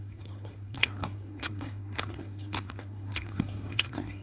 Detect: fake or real fake